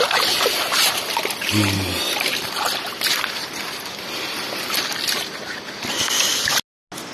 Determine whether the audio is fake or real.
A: real